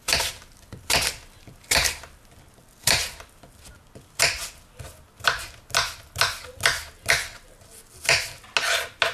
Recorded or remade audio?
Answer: recorded